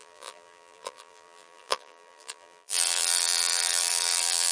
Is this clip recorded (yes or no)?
no